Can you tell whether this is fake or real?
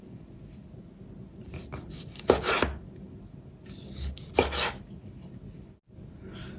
real